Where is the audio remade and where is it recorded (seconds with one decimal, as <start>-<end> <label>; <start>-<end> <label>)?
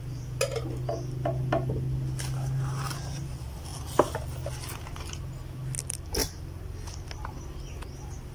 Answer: 0.0-8.3 recorded